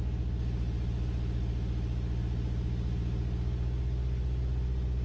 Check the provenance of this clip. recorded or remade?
recorded